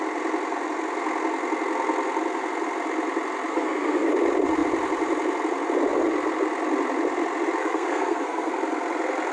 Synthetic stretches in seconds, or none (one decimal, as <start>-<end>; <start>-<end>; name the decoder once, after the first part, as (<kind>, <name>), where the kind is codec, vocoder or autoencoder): 3.5-4.1 (codec, SNAC); 7.6-8.5